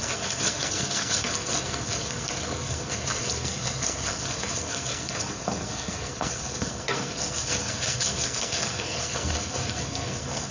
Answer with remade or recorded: remade